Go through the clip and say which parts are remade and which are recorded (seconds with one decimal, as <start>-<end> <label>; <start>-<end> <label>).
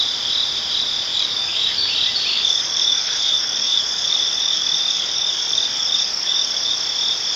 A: 0.0-1.1 recorded; 1.1-1.9 remade; 1.9-2.3 recorded; 2.3-6.7 remade; 6.7-7.4 recorded